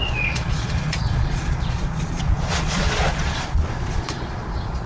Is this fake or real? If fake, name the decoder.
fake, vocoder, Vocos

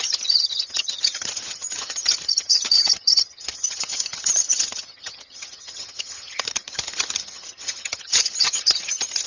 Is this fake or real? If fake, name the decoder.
fake, vocoder, HiFi-GAN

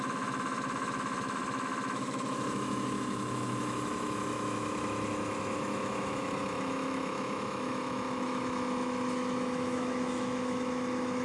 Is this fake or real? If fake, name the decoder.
fake, autoencoder, DAC-VAE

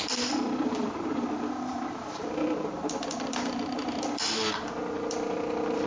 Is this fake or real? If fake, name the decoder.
fake, vocoder, BigVGAN v2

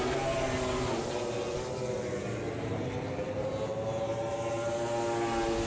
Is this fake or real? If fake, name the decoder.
real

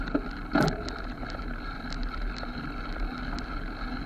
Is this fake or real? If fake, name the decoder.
real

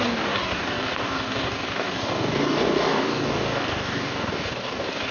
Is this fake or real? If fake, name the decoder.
fake, codec, DAC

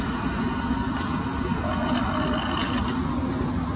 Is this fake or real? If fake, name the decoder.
real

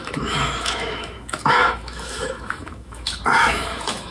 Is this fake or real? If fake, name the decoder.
fake, autoencoder, DAC-VAE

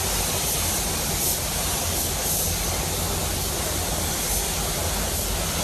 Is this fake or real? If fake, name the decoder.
real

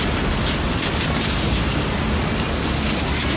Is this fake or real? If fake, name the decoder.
real